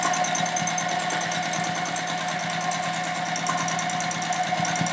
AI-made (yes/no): no